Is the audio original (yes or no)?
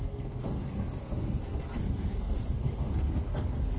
no